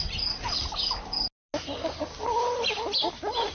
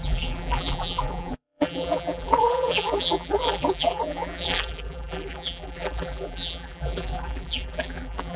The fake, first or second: second